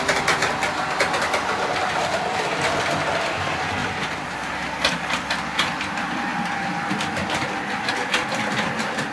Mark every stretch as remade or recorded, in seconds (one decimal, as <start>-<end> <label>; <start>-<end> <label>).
0.0-0.4 remade; 0.4-1.3 recorded; 1.3-6.3 remade; 6.3-7.9 recorded; 7.9-9.1 remade